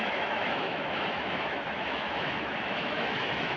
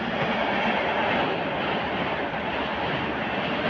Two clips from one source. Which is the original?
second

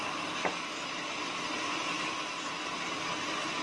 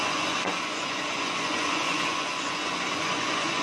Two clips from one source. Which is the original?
first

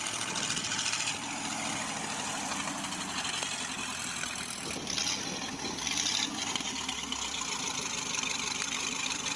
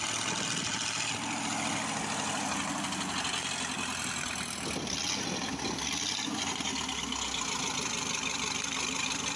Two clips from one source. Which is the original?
second